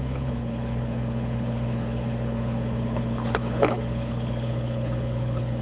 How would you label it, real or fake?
fake